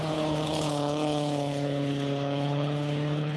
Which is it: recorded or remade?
remade